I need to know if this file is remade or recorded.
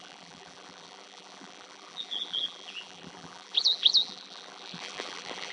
remade